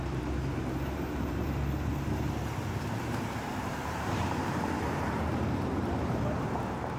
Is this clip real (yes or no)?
no